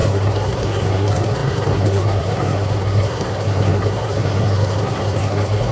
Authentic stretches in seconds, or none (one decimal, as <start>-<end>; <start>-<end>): none